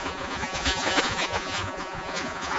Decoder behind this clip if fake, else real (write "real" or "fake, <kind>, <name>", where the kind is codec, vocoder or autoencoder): fake, vocoder, Vocos